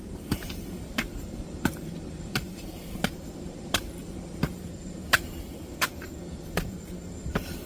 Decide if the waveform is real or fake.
fake